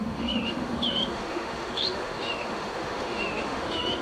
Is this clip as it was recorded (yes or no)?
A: no